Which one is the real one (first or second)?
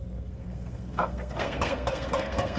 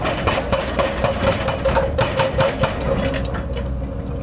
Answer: second